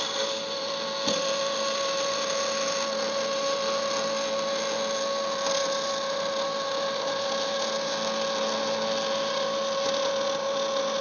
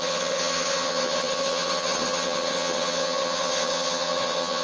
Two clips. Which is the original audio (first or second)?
first